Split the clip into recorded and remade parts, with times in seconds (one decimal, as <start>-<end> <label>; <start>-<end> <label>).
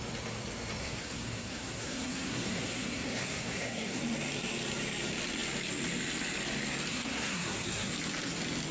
0.0-0.8 recorded; 0.8-4.0 remade; 4.0-6.9 recorded; 6.9-7.9 remade; 7.9-8.7 recorded